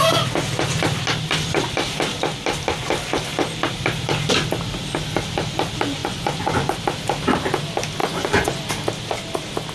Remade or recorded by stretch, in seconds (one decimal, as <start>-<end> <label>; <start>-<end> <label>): 0.0-6.0 recorded; 6.0-6.8 remade; 6.8-8.0 recorded; 8.0-8.7 remade; 8.7-9.7 recorded